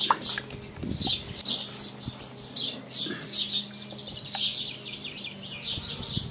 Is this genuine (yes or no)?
yes